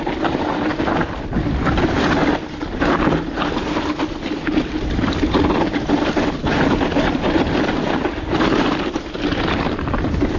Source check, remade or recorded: remade